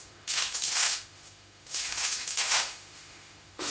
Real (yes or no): no